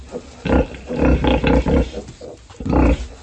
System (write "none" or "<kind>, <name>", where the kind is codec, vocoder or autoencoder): none